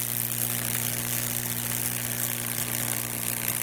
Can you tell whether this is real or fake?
real